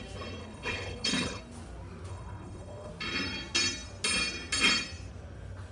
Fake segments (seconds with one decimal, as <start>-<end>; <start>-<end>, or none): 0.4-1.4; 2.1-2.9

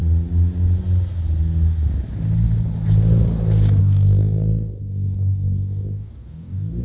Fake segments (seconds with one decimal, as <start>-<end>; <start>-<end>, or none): 3.8-6.8

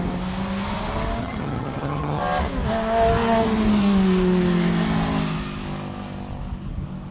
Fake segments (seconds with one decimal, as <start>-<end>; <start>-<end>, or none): 1.2-2.2

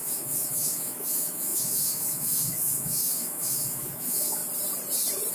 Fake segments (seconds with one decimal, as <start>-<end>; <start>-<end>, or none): 0.0-4.4